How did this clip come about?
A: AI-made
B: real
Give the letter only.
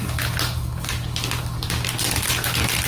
B